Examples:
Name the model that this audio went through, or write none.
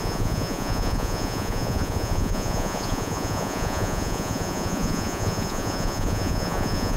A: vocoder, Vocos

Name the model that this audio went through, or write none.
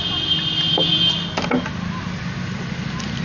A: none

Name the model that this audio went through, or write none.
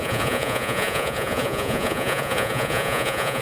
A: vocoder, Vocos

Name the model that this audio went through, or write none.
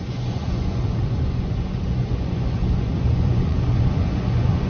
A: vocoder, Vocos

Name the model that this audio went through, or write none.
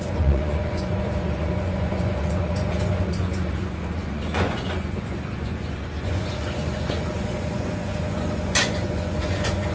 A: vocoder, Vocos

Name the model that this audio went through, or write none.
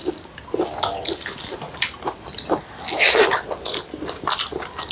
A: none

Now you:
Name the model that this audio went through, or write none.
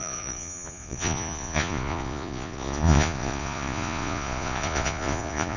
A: vocoder, Vocos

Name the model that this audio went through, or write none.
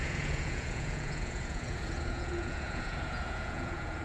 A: vocoder, Vocos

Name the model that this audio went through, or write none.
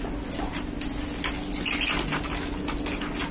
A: none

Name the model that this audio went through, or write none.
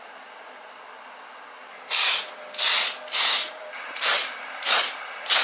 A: none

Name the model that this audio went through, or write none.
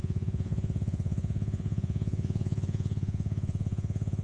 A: vocoder, Vocos